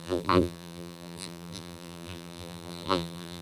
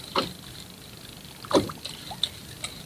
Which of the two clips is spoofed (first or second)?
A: first